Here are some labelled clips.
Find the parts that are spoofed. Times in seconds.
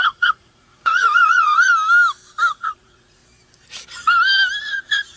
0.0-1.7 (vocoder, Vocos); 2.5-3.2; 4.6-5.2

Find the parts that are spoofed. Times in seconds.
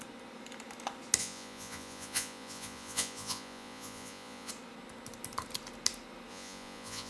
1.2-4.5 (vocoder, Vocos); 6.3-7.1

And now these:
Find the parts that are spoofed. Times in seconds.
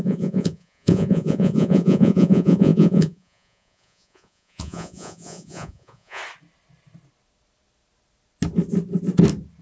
0.0-6.2 (vocoder, Vocos)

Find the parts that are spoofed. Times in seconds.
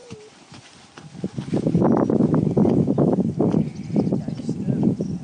none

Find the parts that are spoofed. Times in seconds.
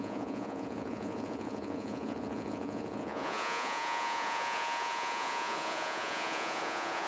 0.0-7.1 (vocoder, Vocos)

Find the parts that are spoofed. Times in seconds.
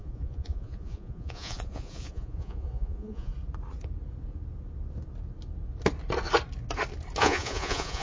0.0-3.3 (vocoder, Vocos); 7.2-8.0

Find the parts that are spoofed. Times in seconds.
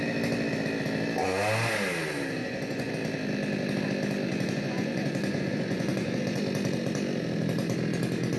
2.4-2.9 (vocoder, Vocos); 4.3-6.4